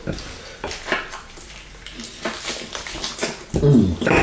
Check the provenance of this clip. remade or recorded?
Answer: recorded